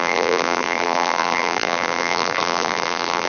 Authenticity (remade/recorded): remade